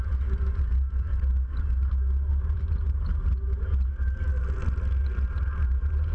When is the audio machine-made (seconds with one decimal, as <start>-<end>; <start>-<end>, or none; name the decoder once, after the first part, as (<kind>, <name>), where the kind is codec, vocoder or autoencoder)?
0.0-1.3 (vocoder, BigVGAN v2); 2.3-3.2; 5.0-6.1